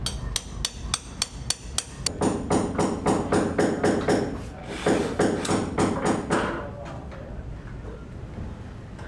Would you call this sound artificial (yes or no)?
no